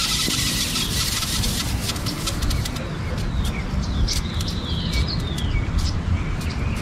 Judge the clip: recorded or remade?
recorded